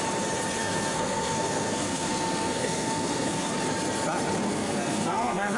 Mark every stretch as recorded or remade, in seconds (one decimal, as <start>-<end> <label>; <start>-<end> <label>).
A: 0.0-0.6 recorded; 0.6-3.5 remade; 3.5-4.5 recorded; 4.5-5.6 remade